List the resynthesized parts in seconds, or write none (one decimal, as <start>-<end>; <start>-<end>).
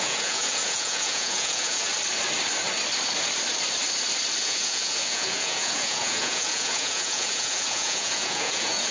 0.0-1.9; 4.4-8.9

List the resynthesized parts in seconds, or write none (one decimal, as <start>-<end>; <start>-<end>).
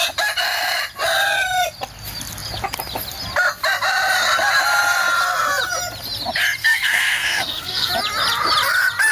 6.6-7.9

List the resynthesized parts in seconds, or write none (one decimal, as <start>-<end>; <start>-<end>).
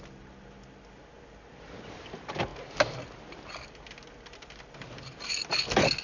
none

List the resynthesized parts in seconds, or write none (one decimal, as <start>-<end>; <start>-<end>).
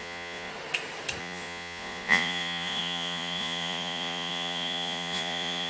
0.0-0.5; 1.2-5.7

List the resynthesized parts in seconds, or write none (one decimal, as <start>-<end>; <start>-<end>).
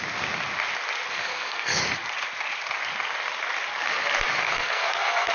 1.2-1.8; 4.4-5.3